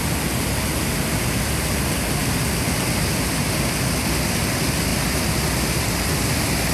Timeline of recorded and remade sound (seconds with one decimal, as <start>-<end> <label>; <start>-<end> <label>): 0.0-6.7 recorded